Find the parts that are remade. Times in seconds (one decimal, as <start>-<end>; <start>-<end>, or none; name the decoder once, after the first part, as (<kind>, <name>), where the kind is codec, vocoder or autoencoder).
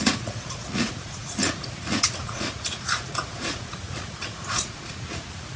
0.0-5.6 (vocoder, Vocos)